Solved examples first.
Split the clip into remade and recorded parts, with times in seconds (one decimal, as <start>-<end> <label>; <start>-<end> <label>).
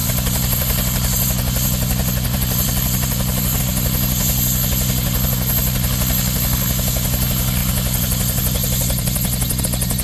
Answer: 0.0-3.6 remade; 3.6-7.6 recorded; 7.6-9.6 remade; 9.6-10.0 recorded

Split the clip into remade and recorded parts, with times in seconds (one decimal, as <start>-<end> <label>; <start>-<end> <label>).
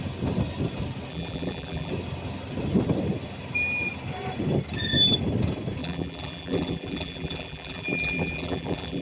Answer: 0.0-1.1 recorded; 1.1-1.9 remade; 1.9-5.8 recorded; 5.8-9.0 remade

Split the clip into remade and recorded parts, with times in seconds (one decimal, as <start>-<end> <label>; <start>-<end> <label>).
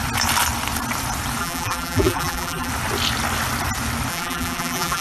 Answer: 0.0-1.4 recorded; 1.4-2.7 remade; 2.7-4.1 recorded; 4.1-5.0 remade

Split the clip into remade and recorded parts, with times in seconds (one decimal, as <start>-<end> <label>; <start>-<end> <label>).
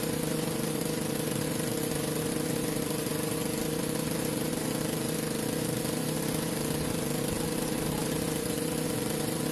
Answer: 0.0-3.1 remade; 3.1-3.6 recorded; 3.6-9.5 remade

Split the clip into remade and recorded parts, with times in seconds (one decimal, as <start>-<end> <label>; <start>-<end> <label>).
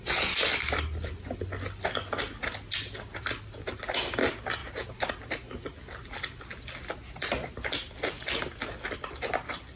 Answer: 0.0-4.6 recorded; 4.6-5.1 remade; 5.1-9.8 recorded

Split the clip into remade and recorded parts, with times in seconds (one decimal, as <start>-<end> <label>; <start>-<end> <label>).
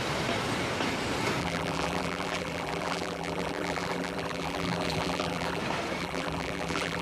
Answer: 0.0-1.4 recorded; 1.4-5.6 remade; 5.6-6.0 recorded; 6.0-7.0 remade